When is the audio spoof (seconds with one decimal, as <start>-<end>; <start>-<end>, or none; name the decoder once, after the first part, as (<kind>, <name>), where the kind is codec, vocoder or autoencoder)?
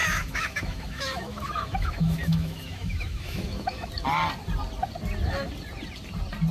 0.0-3.9 (autoencoder, DAC-VAE)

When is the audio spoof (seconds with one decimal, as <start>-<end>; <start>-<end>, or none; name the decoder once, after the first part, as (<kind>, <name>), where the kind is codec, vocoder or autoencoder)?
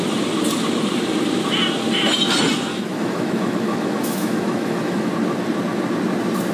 2.7-5.1 (autoencoder, DAC-VAE)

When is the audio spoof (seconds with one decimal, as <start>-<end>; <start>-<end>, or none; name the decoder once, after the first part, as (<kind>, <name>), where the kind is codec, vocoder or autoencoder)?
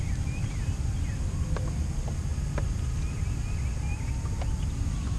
none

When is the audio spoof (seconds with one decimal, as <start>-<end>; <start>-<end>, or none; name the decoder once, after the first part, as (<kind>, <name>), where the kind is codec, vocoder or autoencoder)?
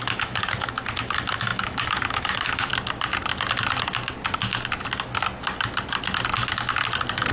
0.0-2.7 (autoencoder, DAC-VAE)